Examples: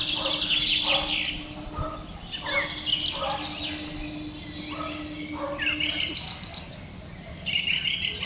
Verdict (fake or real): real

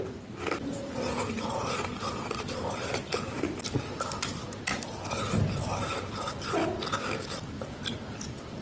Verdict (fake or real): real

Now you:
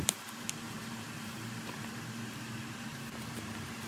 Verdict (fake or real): fake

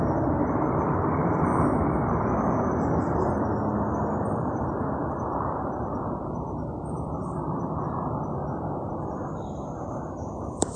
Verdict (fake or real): fake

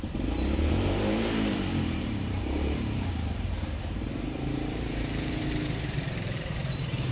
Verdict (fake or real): fake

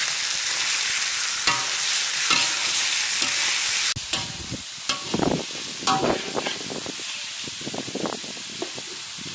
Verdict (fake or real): real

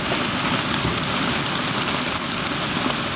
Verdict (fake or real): real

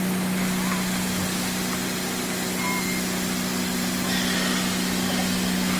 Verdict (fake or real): real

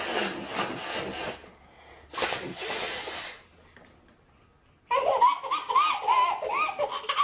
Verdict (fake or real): real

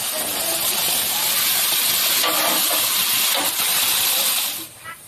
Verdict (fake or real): real